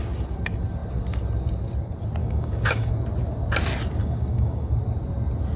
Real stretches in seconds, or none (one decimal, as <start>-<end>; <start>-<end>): 0.0-2.2; 2.9-4.0; 4.7-5.6